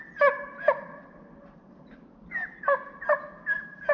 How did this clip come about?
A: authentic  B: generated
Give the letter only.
A